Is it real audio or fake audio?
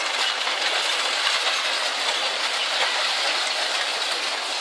real